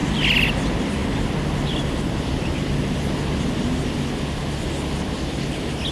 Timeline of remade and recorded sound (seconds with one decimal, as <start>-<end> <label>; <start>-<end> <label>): 0.0-5.9 recorded